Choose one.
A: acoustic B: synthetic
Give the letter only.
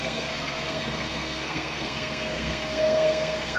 B